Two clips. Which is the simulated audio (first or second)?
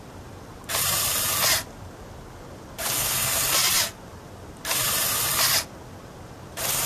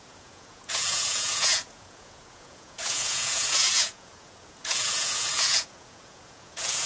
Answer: second